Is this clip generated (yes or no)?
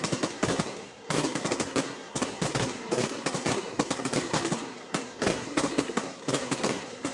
yes